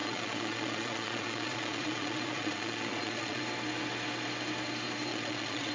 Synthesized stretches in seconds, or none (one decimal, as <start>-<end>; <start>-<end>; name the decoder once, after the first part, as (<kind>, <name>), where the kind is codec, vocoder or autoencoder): 0.0-3.4 (vocoder, Vocos); 5.1-5.7